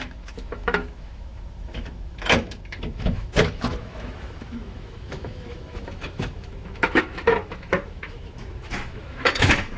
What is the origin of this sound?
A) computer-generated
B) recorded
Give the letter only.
A